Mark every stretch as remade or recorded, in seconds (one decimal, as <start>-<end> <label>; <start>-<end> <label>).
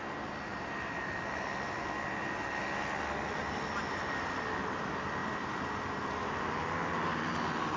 0.0-0.5 recorded; 0.5-2.6 remade; 2.6-5.2 recorded; 5.2-6.0 remade; 6.0-7.8 recorded